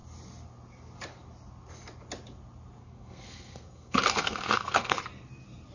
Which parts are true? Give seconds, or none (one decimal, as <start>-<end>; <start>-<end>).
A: 0.0-2.8; 5.0-5.7